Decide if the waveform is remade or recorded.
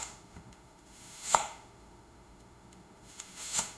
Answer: remade